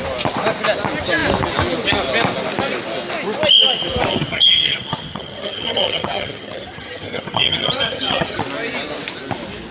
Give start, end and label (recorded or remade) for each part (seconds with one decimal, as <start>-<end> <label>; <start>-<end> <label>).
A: 0.0-4.1 recorded; 4.1-8.4 remade; 8.4-9.7 recorded